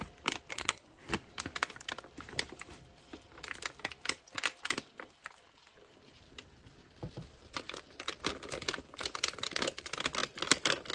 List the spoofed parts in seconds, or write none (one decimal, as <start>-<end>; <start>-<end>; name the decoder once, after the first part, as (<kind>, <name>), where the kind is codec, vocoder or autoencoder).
0.5-1.1 (codec, SNAC)